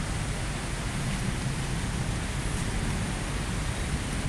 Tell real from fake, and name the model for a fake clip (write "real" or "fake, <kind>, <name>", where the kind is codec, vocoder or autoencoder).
real